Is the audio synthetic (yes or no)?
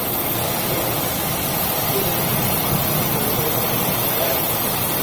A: no